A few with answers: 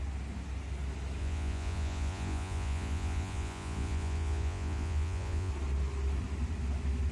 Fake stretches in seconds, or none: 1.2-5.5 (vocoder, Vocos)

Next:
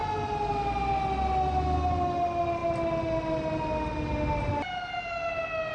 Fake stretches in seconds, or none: none

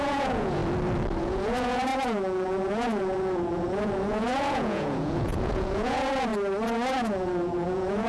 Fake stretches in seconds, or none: 0.0-0.6 (vocoder, Vocos); 1.2-6.3; 6.9-8.1

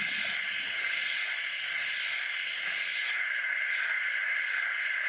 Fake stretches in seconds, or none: 1.0-1.9 (vocoder, Vocos); 3.0-4.2

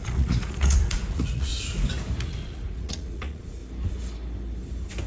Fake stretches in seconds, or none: 0.0-1.5 (vocoder, Vocos); 2.2-3.6

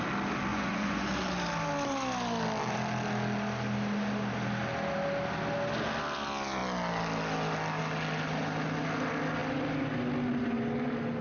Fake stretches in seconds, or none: 0.5-1.1 (vocoder, Vocos)

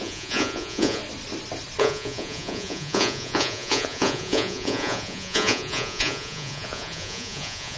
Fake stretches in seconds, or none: 0.0-1.0 (vocoder, Vocos); 1.8-7.8

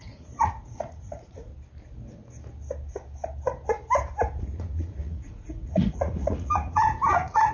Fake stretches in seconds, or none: 0.0-1.5 (vocoder, Vocos); 4.4-7.5